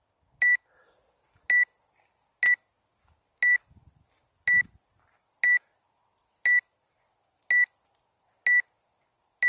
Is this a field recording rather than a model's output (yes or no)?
yes